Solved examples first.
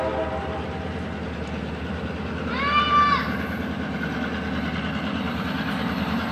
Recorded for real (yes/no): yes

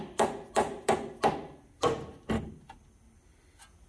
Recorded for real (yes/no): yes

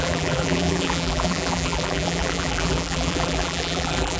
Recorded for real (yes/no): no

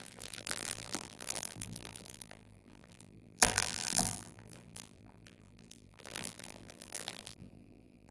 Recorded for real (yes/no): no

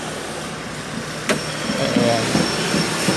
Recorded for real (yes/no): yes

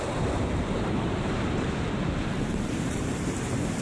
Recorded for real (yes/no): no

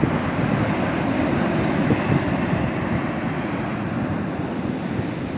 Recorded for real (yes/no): yes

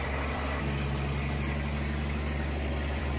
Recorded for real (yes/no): no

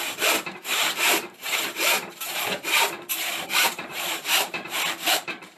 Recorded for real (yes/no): no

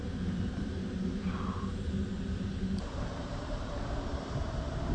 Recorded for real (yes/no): no